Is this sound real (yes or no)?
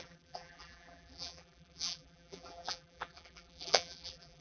no